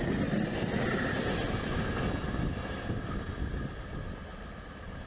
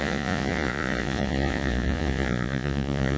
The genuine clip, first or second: first